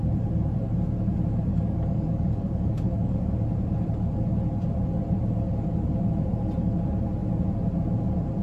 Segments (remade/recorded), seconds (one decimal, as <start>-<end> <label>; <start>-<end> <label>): 0.0-1.5 recorded; 1.5-3.2 remade; 3.2-8.4 recorded